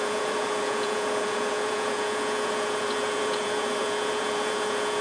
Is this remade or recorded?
remade